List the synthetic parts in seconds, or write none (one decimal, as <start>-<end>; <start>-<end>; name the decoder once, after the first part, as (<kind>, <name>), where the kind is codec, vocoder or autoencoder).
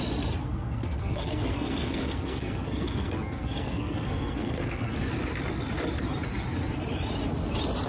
0.4-5.1 (codec, SNAC)